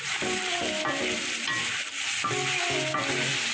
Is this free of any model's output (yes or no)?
yes